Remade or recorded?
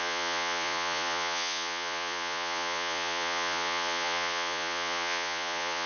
remade